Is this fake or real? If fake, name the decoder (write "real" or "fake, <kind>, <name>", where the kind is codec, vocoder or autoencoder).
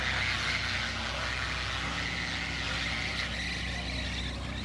real